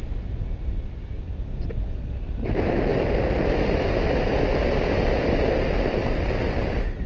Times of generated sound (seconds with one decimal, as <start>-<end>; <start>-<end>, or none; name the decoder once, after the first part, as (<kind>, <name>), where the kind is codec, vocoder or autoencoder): none